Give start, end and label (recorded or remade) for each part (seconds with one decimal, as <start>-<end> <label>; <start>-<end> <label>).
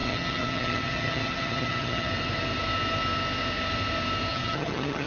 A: 0.0-2.1 remade; 2.1-4.3 recorded; 4.3-5.1 remade